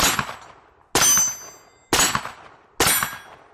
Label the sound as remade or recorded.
recorded